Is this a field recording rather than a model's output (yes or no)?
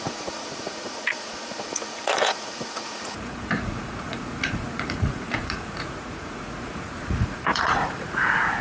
no